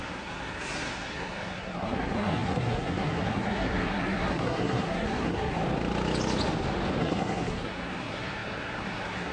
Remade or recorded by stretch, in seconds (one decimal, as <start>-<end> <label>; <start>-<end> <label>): 0.0-5.6 remade; 5.6-7.0 recorded; 7.0-9.3 remade

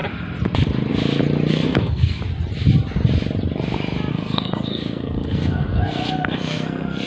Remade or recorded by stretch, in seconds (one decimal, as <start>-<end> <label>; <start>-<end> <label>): 0.0-1.5 recorded; 1.5-2.2 remade; 2.2-4.1 recorded; 4.1-7.1 remade